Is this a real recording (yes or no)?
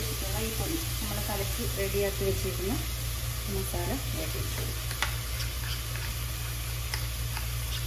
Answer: yes